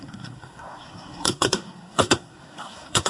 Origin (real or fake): fake